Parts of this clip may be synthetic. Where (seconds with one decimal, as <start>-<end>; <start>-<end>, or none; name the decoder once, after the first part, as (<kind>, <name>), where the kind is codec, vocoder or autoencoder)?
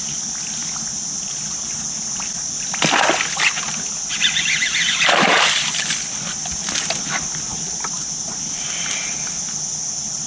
none